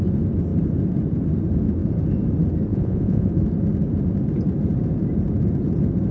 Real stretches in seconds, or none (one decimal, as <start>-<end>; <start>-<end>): 0.0-2.7; 3.3-6.1